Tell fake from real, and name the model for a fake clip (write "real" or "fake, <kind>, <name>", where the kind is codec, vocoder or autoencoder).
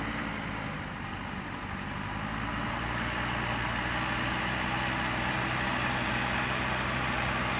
real